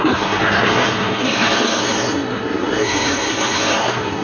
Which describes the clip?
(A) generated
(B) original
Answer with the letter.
A